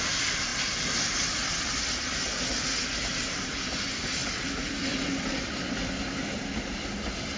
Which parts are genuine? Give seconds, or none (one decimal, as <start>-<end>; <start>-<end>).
0.0-7.4